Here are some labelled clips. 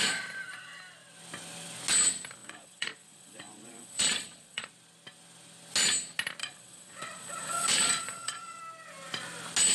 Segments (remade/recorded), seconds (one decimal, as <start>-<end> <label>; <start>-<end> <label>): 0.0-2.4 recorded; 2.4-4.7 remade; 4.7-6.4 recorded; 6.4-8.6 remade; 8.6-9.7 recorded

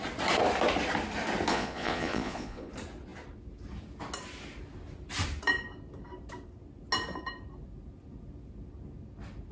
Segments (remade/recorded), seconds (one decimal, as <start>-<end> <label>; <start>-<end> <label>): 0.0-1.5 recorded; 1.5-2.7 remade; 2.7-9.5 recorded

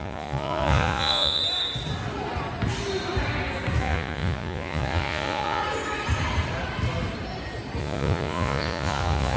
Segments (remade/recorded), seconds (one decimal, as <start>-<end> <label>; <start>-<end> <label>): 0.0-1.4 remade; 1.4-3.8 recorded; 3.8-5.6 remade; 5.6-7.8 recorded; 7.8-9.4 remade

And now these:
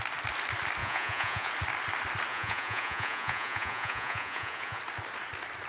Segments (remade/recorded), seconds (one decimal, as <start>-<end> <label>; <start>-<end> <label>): 0.0-0.8 recorded; 0.8-1.5 remade; 1.5-2.3 recorded; 2.3-4.8 remade; 4.8-5.7 recorded